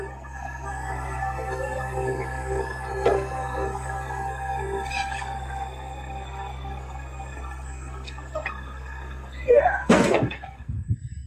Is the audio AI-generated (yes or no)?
yes